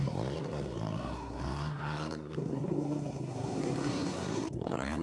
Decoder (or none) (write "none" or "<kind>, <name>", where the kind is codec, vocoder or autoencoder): codec, SNAC